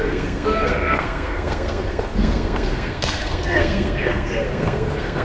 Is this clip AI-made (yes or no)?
yes